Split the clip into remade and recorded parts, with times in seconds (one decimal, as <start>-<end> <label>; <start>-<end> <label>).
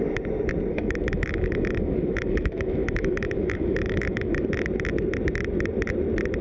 0.0-0.7 recorded; 0.7-4.5 remade; 4.5-6.4 recorded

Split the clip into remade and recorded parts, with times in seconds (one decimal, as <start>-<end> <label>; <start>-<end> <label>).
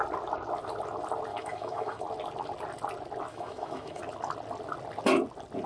0.0-1.3 recorded; 1.3-2.0 remade; 2.0-3.3 recorded; 3.3-4.0 remade; 4.0-5.7 recorded